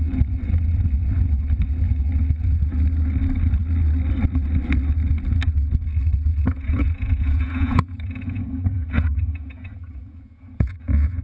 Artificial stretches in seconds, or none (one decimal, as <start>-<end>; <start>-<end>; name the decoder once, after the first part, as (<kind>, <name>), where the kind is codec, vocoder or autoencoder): 6.3-11.2 (vocoder, Vocos)

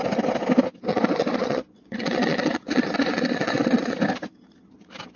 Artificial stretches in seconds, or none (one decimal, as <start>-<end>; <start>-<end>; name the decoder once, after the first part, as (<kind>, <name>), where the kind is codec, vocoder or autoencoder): 0.9-4.0 (vocoder, Vocos)

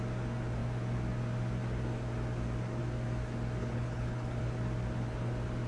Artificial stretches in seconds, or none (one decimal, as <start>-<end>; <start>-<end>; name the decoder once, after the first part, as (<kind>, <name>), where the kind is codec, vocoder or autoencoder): 3.6-4.4 (codec, HILCodec)

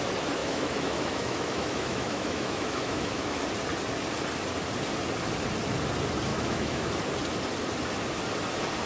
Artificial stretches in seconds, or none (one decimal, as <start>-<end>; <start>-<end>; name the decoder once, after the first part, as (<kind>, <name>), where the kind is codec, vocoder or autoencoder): 0.4-3.4 (autoencoder, DAC-VAE); 6.3-6.9